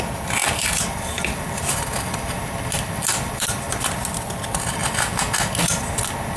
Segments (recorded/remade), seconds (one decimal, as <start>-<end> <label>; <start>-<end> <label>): 0.0-0.4 recorded; 0.4-3.7 remade; 3.7-6.4 recorded